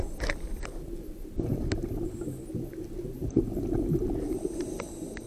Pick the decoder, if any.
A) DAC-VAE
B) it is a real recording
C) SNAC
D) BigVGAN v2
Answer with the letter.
B